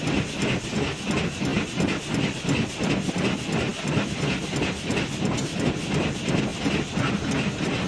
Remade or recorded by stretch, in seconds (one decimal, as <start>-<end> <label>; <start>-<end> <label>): 0.0-7.9 recorded